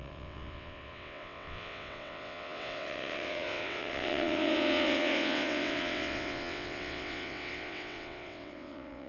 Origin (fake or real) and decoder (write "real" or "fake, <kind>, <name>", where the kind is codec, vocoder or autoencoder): fake, vocoder, WaveNeXt